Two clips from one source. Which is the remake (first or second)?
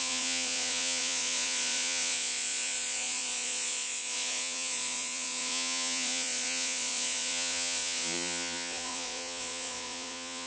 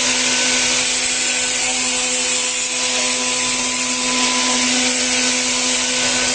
first